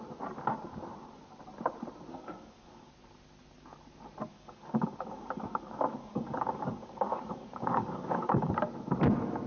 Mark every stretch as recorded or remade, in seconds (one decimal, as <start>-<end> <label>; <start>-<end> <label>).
0.0-2.1 recorded; 2.1-2.9 remade; 2.9-4.3 recorded; 4.3-8.5 remade; 8.5-9.5 recorded